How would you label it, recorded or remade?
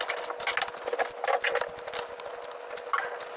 recorded